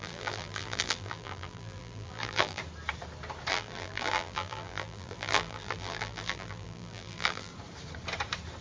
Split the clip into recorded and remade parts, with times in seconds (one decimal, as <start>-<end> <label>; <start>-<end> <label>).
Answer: 0.0-2.6 remade; 2.6-3.5 recorded; 3.5-7.5 remade; 7.5-8.6 recorded